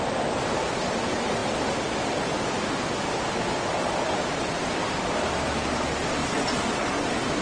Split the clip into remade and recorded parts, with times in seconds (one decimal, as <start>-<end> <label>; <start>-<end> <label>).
0.0-7.4 recorded